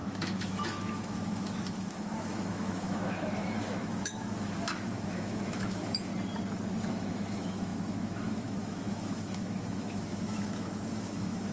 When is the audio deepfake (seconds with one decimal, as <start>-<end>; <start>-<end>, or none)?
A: 0.0-6.1; 6.9-11.5